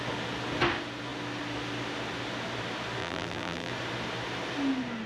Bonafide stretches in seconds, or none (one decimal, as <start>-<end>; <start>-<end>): 0.0-3.0; 3.7-5.1